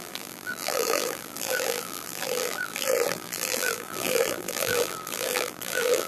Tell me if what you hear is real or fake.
fake